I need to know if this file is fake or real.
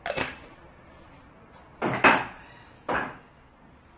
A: real